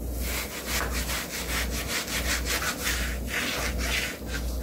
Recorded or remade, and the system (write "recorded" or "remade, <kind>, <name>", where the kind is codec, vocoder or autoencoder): recorded